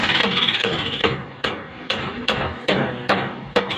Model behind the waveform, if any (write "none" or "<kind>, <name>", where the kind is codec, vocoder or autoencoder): codec, DAC